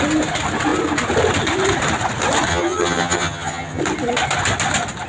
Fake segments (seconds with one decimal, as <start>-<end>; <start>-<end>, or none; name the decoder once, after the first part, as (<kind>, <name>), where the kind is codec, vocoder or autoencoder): 2.5-3.8 (vocoder, HiFi-GAN)